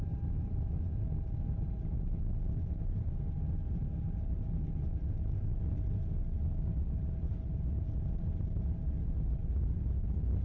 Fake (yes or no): no